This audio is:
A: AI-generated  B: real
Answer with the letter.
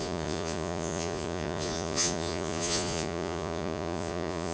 A